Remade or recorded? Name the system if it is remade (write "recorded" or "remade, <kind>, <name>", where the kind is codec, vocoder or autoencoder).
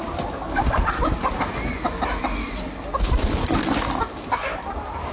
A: recorded